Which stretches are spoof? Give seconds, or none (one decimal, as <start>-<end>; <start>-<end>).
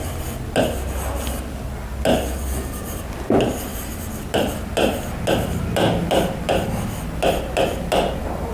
none